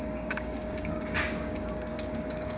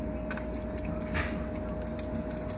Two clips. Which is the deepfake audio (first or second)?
first